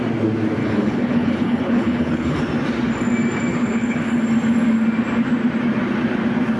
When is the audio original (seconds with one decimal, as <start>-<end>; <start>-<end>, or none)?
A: 0.0-0.6; 2.4-3.5; 4.2-6.6